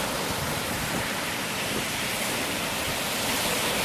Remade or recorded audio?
recorded